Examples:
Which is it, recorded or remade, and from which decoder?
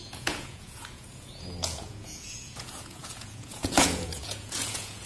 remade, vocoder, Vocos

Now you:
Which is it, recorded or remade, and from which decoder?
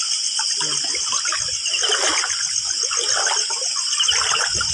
recorded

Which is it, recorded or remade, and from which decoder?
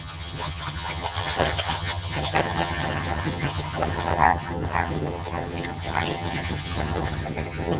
remade, vocoder, HiFi-GAN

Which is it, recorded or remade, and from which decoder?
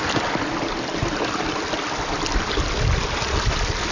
recorded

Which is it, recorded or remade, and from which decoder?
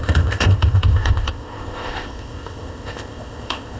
remade, codec, ZipCodec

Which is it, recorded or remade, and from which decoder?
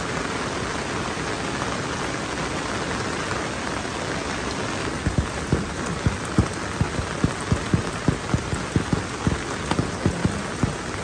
recorded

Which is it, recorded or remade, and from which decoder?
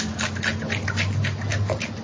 recorded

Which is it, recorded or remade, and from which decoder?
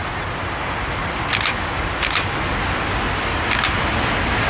recorded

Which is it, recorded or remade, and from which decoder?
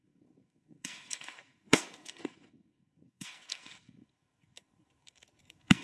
remade, codec, SNAC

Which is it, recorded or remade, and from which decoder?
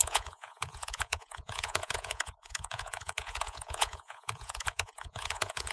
remade, vocoder, Vocos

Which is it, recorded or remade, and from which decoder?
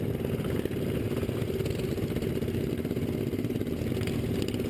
recorded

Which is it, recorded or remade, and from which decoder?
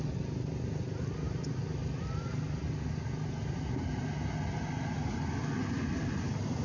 recorded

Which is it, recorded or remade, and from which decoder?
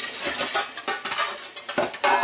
recorded